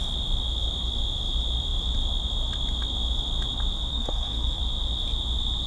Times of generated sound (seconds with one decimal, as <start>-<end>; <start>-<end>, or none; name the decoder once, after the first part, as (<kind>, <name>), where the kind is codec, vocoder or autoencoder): 3.9-4.6 (codec, SNAC)